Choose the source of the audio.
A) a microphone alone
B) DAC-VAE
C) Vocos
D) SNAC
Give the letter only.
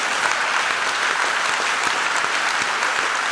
A